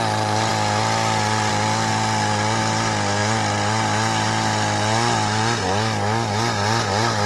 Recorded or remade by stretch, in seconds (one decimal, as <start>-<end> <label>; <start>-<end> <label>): 0.0-7.3 recorded

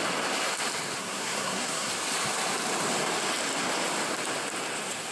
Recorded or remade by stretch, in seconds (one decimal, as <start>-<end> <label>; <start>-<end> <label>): 0.0-1.0 recorded; 1.0-1.9 remade; 1.9-5.1 recorded